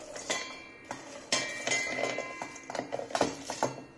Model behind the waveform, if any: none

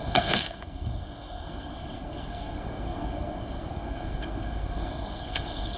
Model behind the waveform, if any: codec, SNAC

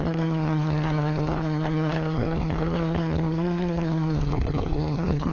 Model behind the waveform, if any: codec, SNAC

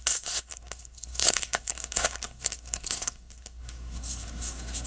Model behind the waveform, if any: codec, SNAC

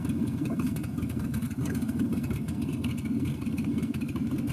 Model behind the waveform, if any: codec, SNAC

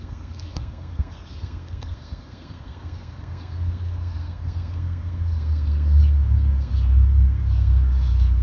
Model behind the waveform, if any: codec, SNAC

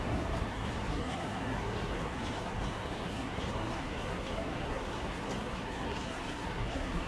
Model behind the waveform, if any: codec, SNAC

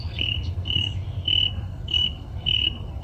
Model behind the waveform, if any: codec, SNAC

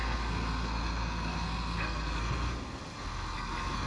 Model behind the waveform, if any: codec, SNAC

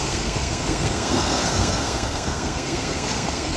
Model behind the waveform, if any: codec, SNAC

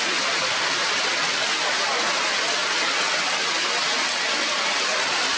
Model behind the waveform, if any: none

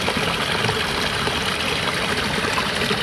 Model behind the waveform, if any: none